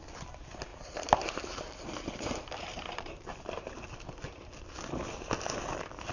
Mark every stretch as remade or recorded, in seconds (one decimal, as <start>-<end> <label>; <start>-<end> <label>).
0.0-0.7 recorded; 0.7-3.9 remade; 3.9-6.1 recorded